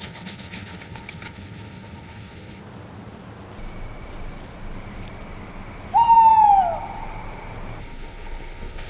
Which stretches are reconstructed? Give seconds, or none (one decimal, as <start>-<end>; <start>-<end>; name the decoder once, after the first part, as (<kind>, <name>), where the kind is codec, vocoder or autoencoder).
0.0-2.6 (codec, HILCodec); 7.8-8.9